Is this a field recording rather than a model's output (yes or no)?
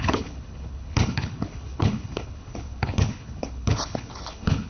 no